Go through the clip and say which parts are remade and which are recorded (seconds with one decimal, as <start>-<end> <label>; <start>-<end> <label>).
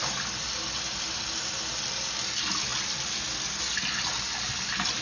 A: 0.0-5.0 recorded